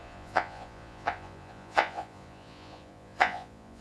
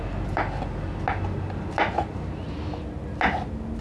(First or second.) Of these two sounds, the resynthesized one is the first